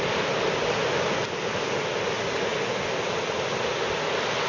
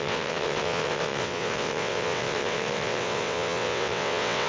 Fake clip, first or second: second